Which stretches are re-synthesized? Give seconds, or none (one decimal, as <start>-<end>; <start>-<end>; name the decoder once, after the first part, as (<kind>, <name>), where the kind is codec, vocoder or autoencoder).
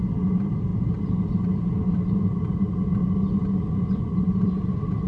none